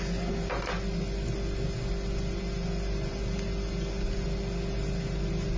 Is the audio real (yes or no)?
yes